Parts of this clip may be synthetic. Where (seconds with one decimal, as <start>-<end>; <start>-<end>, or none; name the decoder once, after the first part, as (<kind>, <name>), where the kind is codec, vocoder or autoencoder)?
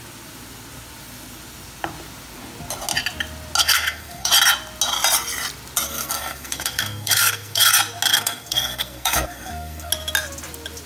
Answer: 3.6-4.3 (codec, SNAC); 5.9-7.7; 8.1-9.9